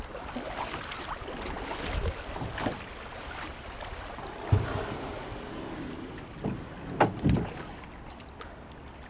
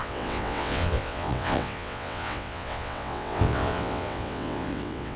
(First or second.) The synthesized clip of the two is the second